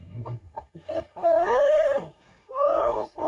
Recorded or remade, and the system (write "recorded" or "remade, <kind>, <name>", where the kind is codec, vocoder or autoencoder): remade, codec, SNAC